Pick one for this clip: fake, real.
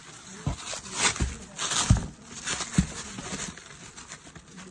real